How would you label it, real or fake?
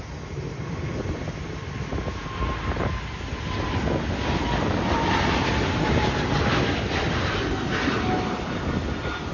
real